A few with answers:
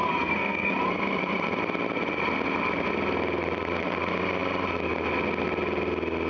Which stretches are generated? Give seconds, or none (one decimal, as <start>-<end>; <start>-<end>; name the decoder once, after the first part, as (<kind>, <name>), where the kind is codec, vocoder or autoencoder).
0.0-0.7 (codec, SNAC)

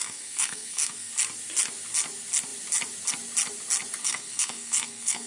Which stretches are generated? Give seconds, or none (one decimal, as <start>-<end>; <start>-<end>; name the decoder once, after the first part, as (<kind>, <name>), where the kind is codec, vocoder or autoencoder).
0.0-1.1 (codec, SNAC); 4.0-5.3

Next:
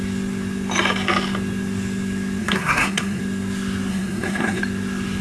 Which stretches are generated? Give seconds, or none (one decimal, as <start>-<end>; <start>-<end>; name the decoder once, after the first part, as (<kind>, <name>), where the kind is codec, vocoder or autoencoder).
2.4-3.2 (codec, SNAC); 3.9-4.6

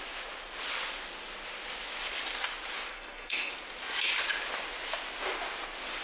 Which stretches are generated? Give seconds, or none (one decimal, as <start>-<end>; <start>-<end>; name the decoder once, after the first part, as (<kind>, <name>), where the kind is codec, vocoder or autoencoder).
2.9-3.5 (codec, SNAC)